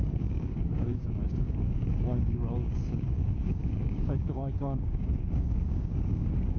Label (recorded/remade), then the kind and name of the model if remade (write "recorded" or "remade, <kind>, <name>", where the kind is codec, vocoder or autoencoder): remade, codec, DAC